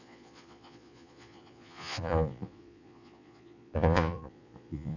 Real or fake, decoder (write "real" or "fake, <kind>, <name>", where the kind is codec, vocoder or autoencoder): fake, vocoder, Vocos